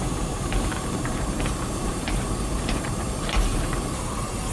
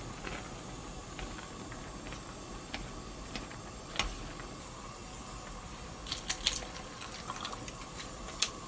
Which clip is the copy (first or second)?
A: first